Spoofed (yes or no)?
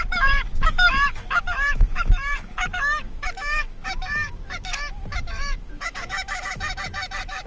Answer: yes